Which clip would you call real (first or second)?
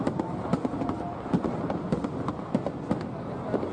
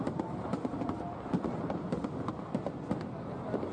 first